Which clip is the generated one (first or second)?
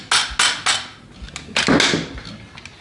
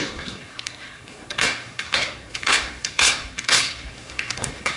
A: second